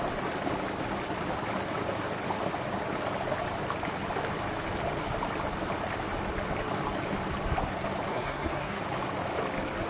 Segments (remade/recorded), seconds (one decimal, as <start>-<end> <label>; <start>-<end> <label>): 0.0-8.1 recorded; 8.1-8.8 remade; 8.8-9.9 recorded